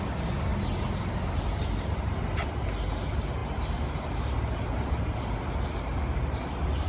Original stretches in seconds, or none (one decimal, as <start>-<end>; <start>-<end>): 0.0-6.9